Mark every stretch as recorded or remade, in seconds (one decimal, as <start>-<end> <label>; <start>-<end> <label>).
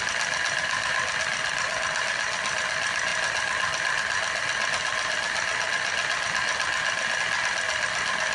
0.0-8.3 recorded